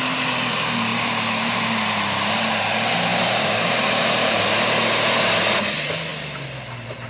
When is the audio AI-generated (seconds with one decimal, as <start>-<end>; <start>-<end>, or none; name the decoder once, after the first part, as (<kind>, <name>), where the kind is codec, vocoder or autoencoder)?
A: 0.9-2.3 (vocoder, BigVGAN v2); 3.1-4.4